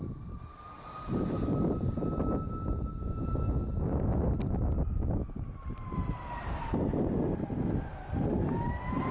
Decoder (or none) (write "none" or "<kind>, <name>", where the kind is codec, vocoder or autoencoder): none